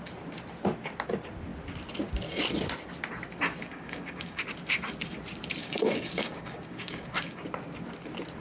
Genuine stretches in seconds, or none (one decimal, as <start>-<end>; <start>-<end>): 0.0-3.6; 4.4-5.6; 7.4-8.4